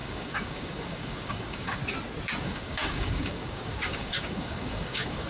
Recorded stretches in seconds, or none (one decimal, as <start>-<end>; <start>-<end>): 1.8-2.4